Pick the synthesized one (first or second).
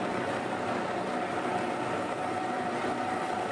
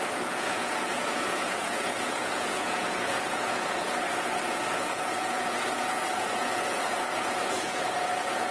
second